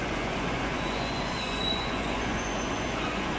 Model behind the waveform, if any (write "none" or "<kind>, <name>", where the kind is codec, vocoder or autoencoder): vocoder, Vocos